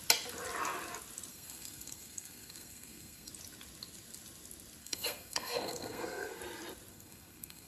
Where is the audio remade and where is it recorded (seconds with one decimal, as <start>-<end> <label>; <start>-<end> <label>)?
0.0-1.3 recorded; 1.3-3.3 remade; 3.3-4.8 recorded; 4.8-6.4 remade; 6.4-6.9 recorded; 6.9-7.7 remade